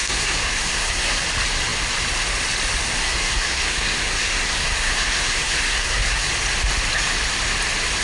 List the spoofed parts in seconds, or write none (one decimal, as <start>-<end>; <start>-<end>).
0.0-1.2; 3.0-6.3